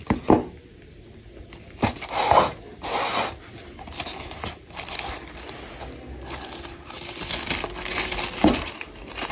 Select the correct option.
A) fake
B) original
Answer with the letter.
B